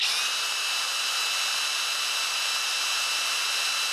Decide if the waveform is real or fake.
real